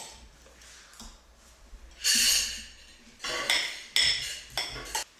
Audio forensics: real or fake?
real